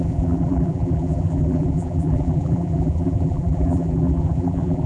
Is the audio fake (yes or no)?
yes